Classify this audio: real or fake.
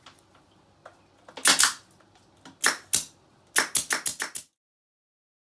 real